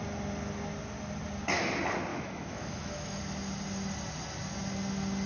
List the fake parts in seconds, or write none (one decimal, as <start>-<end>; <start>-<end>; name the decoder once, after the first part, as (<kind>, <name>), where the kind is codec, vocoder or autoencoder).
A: 2.1-3.2 (autoencoder, DAC-VAE)

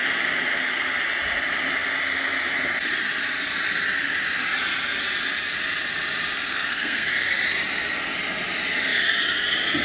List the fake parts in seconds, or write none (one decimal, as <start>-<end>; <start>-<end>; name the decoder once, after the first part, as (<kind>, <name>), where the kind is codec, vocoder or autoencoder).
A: 6.5-7.1 (codec, SNAC)

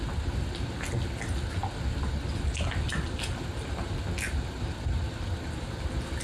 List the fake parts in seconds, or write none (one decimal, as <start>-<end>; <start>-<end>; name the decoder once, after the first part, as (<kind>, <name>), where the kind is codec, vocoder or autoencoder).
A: none

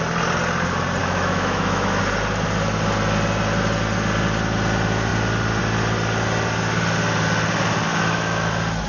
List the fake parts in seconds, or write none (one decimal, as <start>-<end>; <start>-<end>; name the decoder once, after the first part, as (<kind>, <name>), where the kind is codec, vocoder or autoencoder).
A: 1.0-2.0 (autoencoder, DAC-VAE); 7.9-8.5

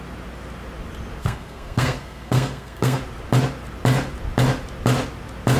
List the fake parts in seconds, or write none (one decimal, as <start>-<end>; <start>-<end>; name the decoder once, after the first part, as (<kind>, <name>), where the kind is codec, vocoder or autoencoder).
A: 1.2-3.0 (codec, SNAC)

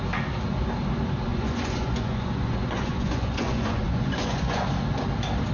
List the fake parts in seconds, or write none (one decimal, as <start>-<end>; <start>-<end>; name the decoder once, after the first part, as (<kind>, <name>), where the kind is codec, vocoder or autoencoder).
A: 1.3-4.6 (vocoder, Vocos)

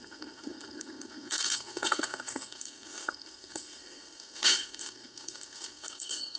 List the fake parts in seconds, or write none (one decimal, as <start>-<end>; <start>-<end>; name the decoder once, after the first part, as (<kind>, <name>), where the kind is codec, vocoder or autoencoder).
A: 0.0-6.4 (codec, SNAC)

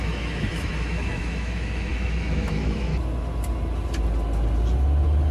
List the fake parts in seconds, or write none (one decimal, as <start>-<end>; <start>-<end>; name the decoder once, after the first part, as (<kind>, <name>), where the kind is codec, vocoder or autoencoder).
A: 0.0-2.9 (autoencoder, DAC-VAE)